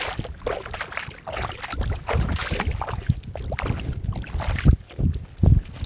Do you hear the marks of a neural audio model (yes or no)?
no